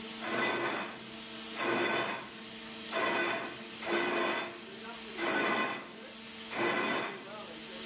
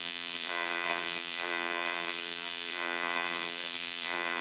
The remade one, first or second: second